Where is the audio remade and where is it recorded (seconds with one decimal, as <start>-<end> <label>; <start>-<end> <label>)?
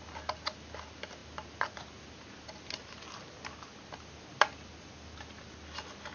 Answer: 0.0-6.1 recorded